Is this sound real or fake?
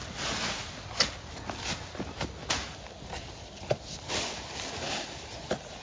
real